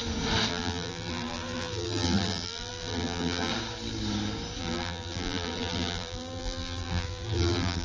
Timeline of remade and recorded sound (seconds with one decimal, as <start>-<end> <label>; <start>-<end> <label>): 0.0-0.5 recorded; 0.5-3.5 remade; 3.5-4.6 recorded; 4.6-7.8 remade